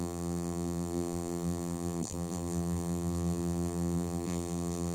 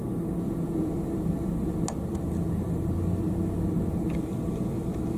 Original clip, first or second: second